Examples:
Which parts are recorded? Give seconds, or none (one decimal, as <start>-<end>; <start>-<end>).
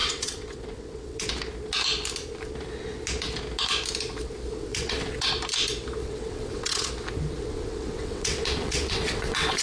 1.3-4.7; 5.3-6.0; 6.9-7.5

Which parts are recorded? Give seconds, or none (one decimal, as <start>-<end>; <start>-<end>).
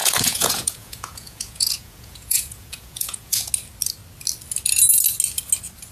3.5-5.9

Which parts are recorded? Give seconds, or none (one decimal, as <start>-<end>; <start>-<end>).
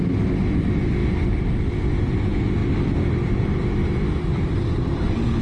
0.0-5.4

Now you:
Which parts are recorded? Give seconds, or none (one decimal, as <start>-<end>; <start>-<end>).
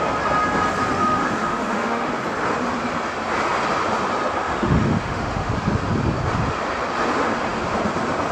0.0-0.9; 2.1-4.4; 5.5-8.3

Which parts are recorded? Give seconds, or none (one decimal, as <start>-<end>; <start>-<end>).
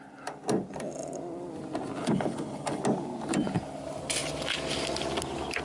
0.0-2.0; 2.8-5.6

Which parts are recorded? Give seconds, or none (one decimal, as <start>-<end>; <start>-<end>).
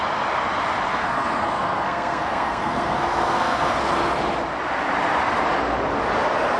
0.0-0.9; 3.9-6.6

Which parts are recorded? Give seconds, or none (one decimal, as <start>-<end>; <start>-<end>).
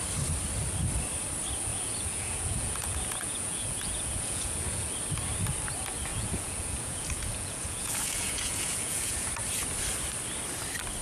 0.0-1.7; 4.9-6.1; 9.3-11.0